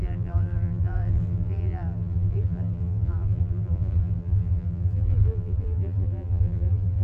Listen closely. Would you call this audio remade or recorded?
remade